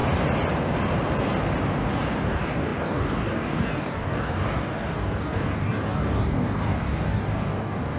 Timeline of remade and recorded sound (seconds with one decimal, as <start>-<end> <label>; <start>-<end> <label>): 0.0-2.3 recorded; 2.3-8.0 remade

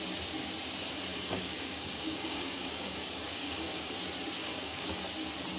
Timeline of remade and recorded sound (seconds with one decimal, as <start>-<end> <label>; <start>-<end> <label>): 0.0-1.1 recorded; 1.1-3.9 remade; 3.9-4.4 recorded; 4.4-5.0 remade; 5.0-5.6 recorded

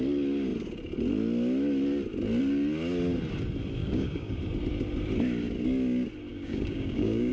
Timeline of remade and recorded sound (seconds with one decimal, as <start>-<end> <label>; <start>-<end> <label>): 0.0-3.8 recorded; 3.8-4.4 remade; 4.4-6.3 recorded; 6.3-7.3 remade

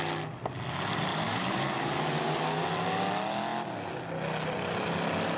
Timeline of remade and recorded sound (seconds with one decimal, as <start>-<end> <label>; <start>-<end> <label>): 0.0-1.1 recorded; 1.1-2.6 remade; 2.6-5.4 recorded

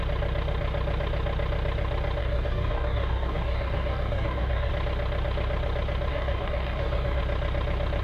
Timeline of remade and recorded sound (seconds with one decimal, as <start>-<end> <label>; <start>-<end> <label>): 0.0-2.2 recorded; 2.2-4.7 remade; 4.7-6.1 recorded; 6.1-7.2 remade; 7.2-8.0 recorded

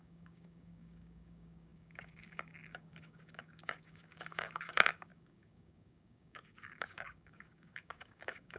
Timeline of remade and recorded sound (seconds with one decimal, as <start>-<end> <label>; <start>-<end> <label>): 0.0-8.6 remade